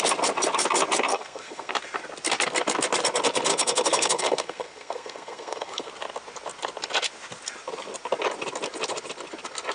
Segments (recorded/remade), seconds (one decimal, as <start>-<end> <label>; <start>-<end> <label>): 0.0-1.1 recorded; 1.1-1.7 remade; 1.7-3.5 recorded; 3.5-5.9 remade; 5.9-9.7 recorded